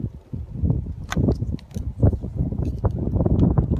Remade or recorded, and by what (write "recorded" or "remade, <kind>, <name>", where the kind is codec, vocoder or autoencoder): recorded